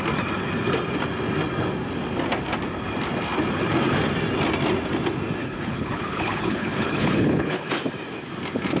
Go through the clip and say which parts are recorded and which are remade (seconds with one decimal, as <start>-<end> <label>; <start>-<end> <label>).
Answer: 0.0-5.4 recorded; 5.4-7.7 remade; 7.7-8.8 recorded